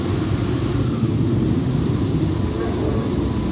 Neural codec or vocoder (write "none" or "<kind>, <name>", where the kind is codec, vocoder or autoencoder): none